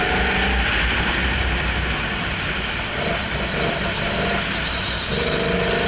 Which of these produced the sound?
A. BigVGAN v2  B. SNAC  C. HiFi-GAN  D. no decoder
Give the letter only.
D